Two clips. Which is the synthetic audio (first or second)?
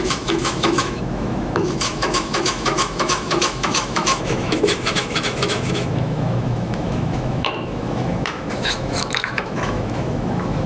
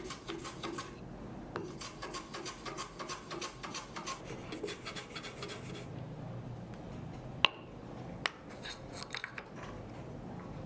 first